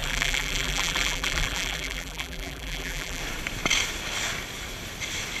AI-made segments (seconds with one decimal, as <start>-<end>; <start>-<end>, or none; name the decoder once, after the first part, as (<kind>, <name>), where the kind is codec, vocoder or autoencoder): 0.0-3.2 (vocoder, BigVGAN v2)